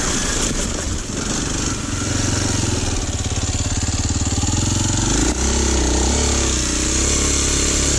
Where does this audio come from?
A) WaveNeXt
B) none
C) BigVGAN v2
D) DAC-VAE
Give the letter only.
B